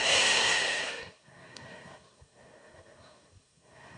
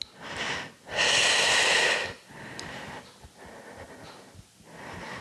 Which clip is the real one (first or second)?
second